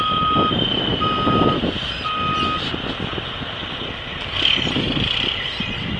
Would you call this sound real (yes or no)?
yes